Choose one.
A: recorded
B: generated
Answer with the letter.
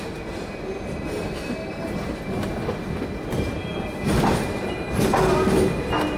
A